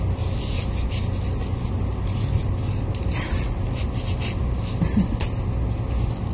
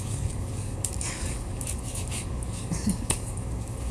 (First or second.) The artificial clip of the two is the second